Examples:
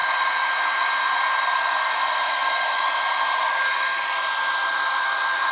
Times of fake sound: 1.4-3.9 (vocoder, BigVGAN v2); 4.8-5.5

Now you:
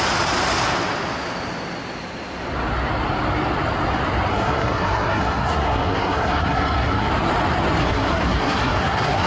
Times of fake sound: 4.3-7.1 (codec, SNAC); 7.8-9.3

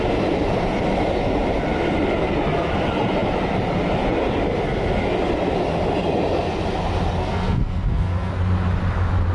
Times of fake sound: 7.2-8.3 (codec, SNAC)

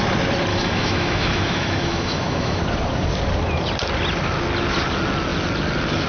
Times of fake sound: 0.5-2.6 (autoencoder, DAC-VAE)

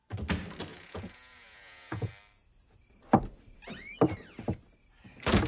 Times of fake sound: 0.7-2.1 (vocoder, Vocos)